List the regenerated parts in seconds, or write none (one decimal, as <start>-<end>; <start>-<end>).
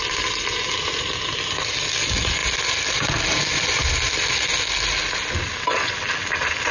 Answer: none